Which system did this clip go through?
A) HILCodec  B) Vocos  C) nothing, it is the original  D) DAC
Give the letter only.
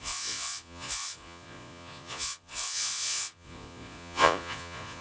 B